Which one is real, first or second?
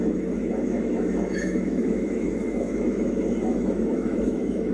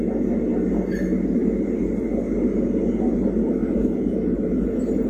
second